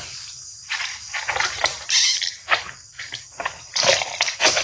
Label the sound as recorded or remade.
recorded